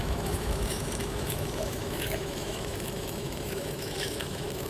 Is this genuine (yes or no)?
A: no